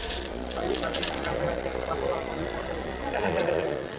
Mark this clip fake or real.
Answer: fake